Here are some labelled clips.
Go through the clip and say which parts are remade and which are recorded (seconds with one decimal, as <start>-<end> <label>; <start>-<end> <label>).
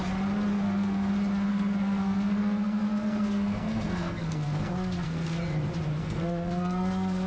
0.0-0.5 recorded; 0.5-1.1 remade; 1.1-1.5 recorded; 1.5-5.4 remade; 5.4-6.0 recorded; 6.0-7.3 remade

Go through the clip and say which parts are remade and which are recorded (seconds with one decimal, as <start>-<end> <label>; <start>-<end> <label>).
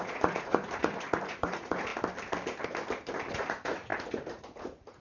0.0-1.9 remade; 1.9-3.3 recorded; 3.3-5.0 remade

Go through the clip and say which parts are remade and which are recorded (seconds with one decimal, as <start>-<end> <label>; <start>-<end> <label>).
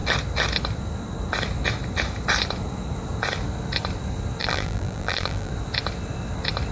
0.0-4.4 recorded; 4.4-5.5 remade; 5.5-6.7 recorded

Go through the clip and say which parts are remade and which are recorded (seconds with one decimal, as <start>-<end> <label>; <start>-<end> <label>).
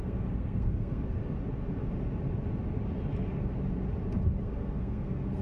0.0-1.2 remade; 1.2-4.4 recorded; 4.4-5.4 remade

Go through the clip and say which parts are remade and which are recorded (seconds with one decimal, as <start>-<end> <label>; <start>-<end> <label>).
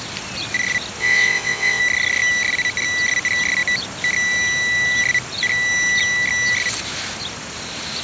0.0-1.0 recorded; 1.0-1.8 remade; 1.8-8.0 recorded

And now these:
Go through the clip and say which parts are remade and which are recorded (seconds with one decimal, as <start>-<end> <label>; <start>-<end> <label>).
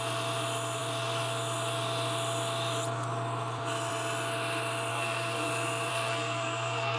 0.0-4.9 recorded; 4.9-5.5 remade; 5.5-5.9 recorded; 5.9-7.0 remade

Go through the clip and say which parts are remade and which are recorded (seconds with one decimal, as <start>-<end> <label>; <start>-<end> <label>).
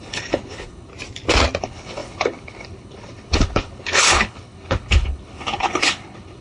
0.0-0.9 remade; 0.9-1.6 recorded; 1.6-6.4 remade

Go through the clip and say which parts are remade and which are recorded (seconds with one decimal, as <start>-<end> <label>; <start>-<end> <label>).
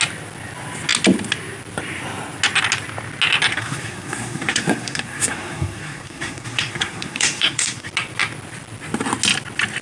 0.0-3.5 recorded; 3.5-7.9 remade; 7.9-9.8 recorded